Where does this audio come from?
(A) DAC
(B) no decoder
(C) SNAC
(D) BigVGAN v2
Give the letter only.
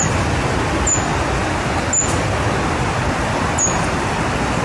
B